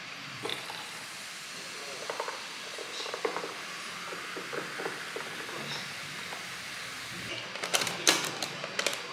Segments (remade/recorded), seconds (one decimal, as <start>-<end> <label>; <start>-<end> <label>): 0.0-0.5 recorded; 0.5-1.6 remade; 1.6-7.7 recorded; 7.7-8.6 remade; 8.6-9.1 recorded